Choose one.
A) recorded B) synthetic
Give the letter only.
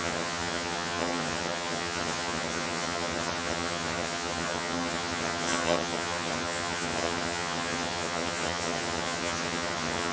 B